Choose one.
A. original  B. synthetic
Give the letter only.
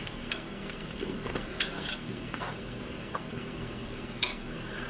B